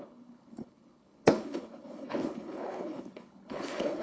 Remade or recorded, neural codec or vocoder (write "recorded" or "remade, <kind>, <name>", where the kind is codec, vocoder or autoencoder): remade, codec, HILCodec